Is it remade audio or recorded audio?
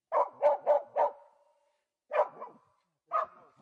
recorded